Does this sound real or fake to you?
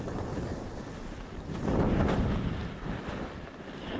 fake